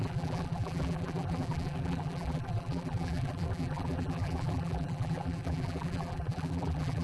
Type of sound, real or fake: fake